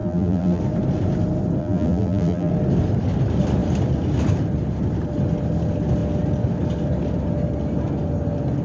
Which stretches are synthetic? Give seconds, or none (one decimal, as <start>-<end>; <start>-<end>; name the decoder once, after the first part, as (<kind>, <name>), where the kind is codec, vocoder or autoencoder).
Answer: 0.0-0.6 (vocoder, BigVGAN v2); 1.6-2.5

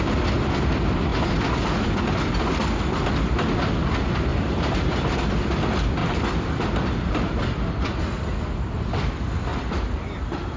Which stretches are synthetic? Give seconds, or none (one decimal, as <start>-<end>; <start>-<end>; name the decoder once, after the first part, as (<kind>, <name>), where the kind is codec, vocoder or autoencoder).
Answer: 1.1-2.0 (vocoder, BigVGAN v2); 4.3-5.6; 6.0-8.0; 9.5-10.2